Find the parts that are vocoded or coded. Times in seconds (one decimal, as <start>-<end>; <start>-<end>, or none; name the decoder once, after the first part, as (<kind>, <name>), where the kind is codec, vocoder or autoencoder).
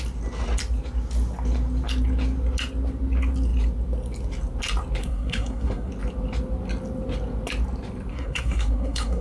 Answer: 5.0-5.9 (codec, SNAC); 8.1-9.2